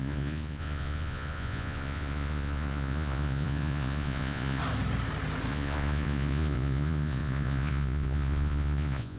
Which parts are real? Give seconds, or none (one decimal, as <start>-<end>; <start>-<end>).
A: 4.6-5.5